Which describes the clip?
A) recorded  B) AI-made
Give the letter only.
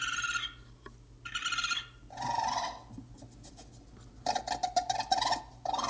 A